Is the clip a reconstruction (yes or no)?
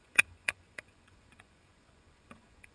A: yes